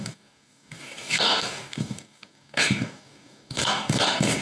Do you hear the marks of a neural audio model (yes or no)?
yes